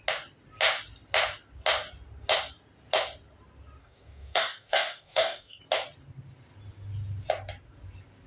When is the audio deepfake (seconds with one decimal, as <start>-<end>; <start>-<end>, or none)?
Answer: 3.8-5.6